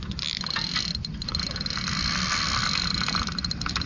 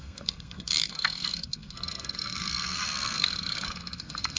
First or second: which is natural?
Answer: first